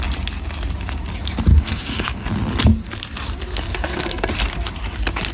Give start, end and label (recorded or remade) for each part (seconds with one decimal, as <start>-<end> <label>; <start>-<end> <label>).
0.0-1.5 recorded; 1.5-2.3 remade; 2.3-3.7 recorded; 3.7-4.3 remade; 4.3-5.3 recorded